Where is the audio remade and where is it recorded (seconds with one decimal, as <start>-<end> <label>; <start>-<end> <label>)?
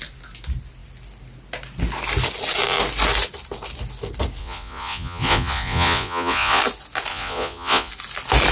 0.0-4.4 recorded; 4.4-6.6 remade; 6.6-7.1 recorded; 7.1-7.9 remade; 7.9-8.5 recorded